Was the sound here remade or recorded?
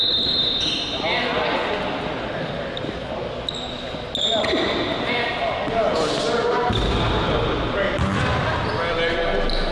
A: recorded